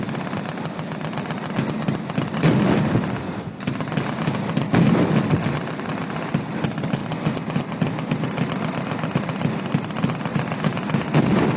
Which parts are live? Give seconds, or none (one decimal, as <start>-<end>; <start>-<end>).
0.0-11.6